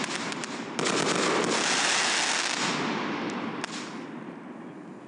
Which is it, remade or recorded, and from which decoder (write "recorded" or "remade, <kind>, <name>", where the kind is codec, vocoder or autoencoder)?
recorded